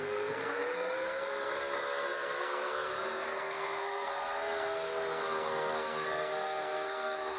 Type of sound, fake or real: fake